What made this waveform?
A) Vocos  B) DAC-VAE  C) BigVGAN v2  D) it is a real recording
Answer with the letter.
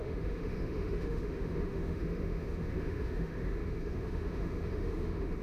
B